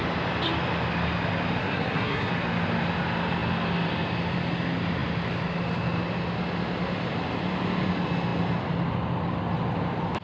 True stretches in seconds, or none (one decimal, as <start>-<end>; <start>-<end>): 0.0-1.6; 2.3-10.2